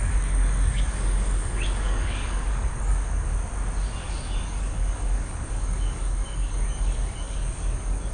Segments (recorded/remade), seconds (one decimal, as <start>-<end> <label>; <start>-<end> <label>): 0.0-3.3 remade; 3.3-4.1 recorded; 4.1-8.1 remade